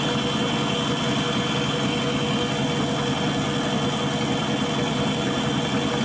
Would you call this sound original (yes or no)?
yes